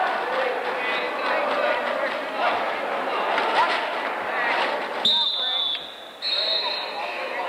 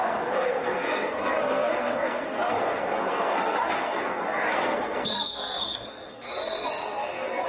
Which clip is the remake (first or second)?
second